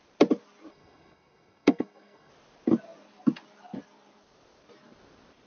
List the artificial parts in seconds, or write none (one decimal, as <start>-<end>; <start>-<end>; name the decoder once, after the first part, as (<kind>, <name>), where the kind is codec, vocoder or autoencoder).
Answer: 0.7-2.3 (codec, SNAC)